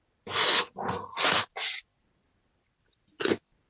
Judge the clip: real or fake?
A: real